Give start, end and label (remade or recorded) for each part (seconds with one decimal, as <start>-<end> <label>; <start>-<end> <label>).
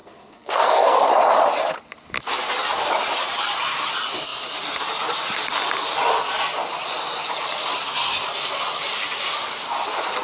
0.0-1.1 remade; 1.1-10.2 recorded